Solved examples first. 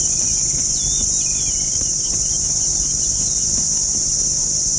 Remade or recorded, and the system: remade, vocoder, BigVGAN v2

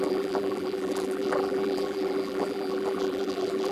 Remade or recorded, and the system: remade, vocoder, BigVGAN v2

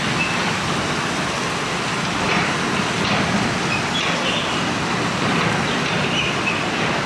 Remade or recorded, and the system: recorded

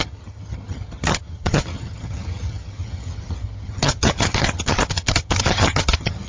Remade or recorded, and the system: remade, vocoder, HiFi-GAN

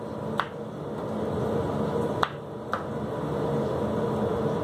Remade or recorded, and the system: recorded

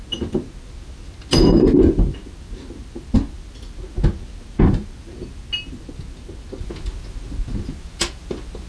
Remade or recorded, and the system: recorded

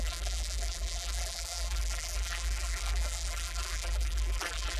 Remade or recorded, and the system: remade, vocoder, BigVGAN v2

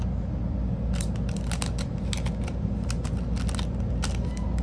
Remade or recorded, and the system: recorded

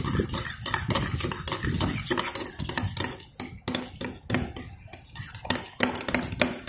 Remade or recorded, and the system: recorded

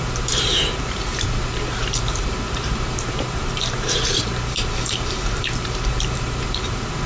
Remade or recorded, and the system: remade, vocoder, BigVGAN v2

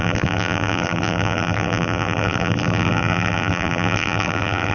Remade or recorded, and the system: remade, vocoder, BigVGAN v2